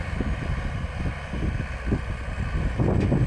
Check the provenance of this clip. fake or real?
real